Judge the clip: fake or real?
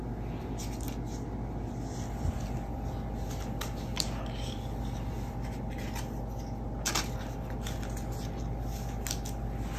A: real